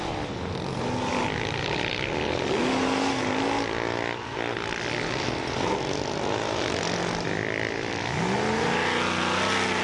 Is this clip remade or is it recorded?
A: recorded